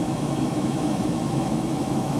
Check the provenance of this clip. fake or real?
fake